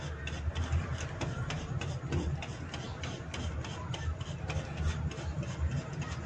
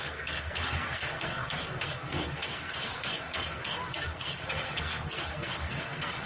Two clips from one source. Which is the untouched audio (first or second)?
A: first